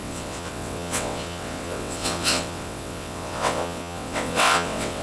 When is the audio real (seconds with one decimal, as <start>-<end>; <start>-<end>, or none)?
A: none